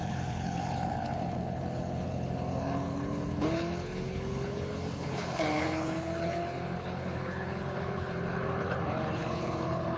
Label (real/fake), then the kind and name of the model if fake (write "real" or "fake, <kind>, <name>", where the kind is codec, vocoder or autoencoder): fake, codec, HILCodec